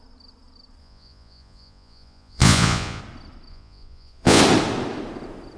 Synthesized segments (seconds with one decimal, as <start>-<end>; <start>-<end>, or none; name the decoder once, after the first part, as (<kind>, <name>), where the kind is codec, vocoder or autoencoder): 0.8-3.0 (vocoder, Vocos); 3.5-4.4